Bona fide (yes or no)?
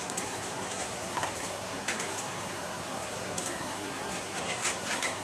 no